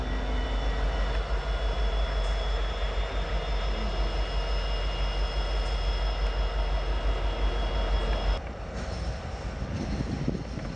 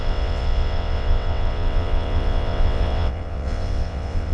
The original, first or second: first